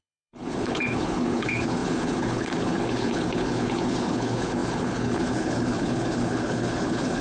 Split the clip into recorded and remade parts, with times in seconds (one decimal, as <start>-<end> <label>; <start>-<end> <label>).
0.0-7.2 remade